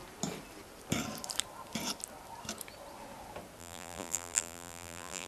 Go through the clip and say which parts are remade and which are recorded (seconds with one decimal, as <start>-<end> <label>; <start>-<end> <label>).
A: 0.0-3.6 recorded; 3.6-5.3 remade